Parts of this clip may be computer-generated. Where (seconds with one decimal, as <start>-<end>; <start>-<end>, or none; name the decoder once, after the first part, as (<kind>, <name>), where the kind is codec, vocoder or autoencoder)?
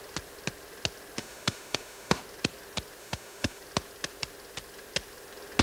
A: 1.2-2.2 (autoencoder, DAC-VAE); 3.0-3.6